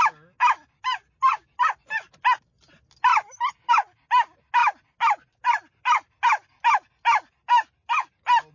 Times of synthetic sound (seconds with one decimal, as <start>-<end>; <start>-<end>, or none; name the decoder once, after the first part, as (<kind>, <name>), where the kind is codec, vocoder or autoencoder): none